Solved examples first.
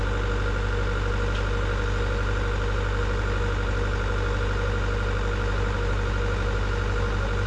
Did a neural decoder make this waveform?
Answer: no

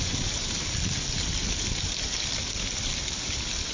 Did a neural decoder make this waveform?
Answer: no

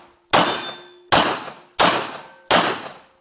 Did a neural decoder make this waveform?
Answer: no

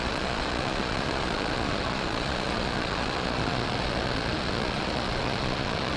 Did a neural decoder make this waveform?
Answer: yes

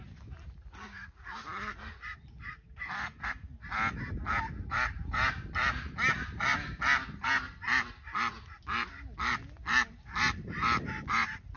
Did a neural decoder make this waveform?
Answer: no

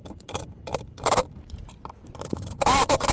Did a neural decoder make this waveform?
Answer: yes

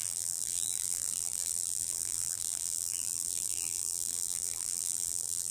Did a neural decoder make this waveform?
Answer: yes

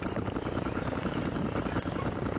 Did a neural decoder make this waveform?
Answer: yes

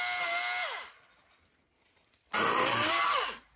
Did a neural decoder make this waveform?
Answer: no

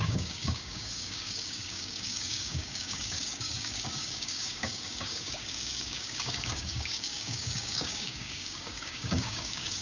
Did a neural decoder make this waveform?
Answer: yes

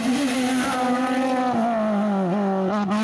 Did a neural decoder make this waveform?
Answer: no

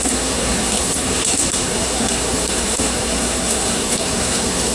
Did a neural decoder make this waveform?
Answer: yes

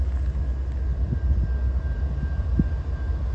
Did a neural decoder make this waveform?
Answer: no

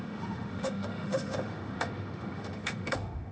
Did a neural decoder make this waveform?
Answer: yes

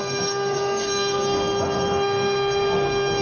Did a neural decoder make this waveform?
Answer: yes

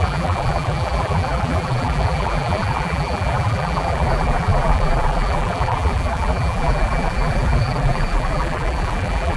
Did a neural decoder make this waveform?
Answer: yes